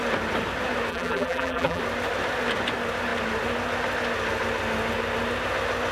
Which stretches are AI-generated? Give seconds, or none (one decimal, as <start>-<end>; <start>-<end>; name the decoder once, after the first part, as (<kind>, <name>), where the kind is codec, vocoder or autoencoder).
0.9-1.8 (vocoder, BigVGAN v2)